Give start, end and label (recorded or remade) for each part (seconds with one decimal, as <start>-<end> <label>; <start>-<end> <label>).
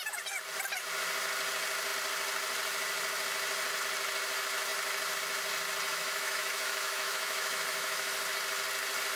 0.0-5.9 recorded; 5.9-8.2 remade; 8.2-9.2 recorded